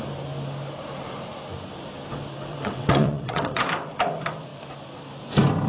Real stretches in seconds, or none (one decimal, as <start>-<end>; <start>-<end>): 0.0-2.5; 3.7-5.7

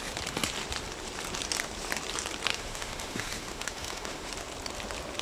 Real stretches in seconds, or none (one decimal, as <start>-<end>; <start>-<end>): 0.0-2.5; 4.3-5.2